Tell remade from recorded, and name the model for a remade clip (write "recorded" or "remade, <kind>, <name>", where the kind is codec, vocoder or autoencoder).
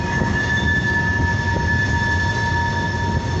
recorded